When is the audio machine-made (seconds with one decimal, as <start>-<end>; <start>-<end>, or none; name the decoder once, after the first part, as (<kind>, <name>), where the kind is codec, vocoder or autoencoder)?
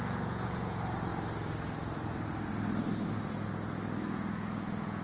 0.0-1.1 (vocoder, Vocos); 4.1-5.0